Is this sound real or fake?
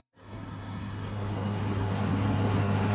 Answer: fake